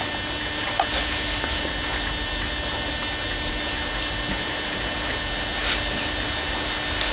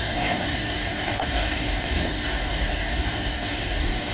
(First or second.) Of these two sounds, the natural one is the first